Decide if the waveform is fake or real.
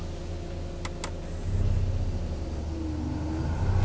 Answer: real